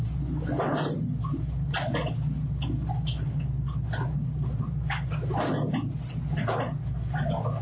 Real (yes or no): yes